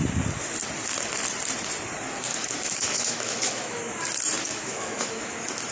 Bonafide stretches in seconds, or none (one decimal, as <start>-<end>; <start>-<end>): 0.0-2.3; 4.0-4.4